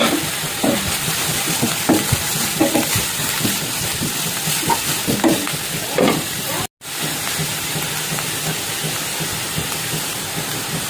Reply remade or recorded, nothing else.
recorded